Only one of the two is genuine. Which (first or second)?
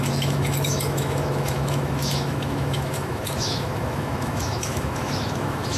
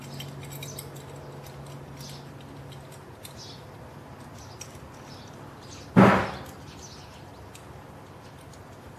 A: second